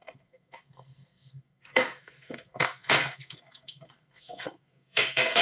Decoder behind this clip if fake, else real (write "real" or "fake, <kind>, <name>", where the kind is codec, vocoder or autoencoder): fake, codec, SNAC